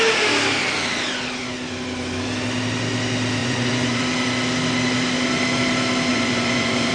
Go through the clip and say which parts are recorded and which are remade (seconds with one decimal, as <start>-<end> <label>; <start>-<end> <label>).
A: 0.0-3.4 recorded; 3.4-4.0 remade; 4.0-6.1 recorded; 6.1-6.9 remade